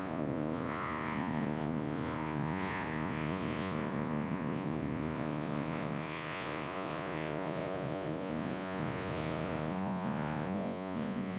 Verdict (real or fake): fake